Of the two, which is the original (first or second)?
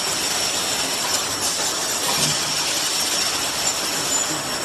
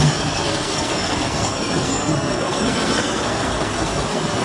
first